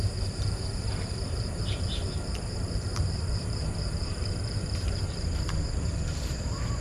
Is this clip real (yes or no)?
no